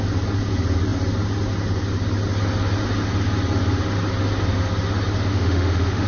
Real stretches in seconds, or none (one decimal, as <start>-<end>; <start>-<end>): 0.0-5.3